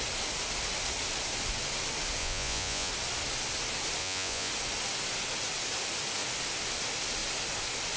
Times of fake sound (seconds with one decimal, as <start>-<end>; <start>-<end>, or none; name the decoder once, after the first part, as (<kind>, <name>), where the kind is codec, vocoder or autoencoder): 2.2-2.9 (vocoder, Vocos); 4.0-4.5